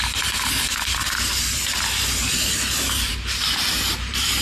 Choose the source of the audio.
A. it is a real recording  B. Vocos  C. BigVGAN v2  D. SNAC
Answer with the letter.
C